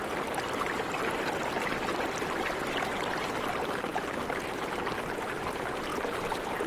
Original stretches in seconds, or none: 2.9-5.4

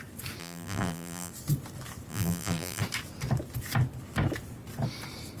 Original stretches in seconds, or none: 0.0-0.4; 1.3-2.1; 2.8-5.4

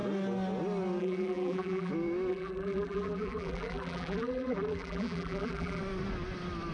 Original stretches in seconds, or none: 0.0-1.0; 1.9-2.3; 5.8-6.7

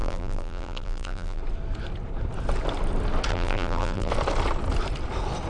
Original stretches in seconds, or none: 1.4-3.3; 4.1-5.5

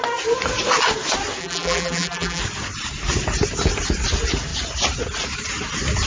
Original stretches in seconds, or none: 0.0-1.4; 2.4-6.1

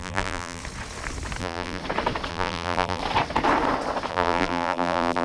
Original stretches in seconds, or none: 0.6-1.4; 1.8-2.3; 3.0-4.1

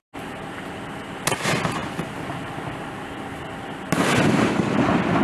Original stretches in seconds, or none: 0.0-5.2

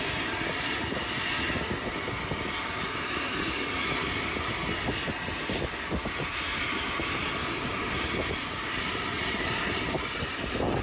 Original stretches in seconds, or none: 0.0-7.4; 10.4-10.8